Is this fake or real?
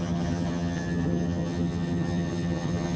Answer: fake